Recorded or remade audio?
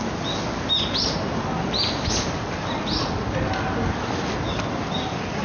recorded